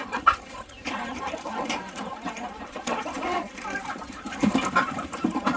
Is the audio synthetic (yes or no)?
yes